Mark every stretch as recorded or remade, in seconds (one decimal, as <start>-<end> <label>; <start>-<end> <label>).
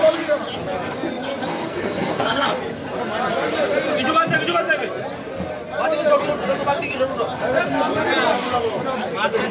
0.0-1.5 recorded; 1.5-2.6 remade; 2.6-9.5 recorded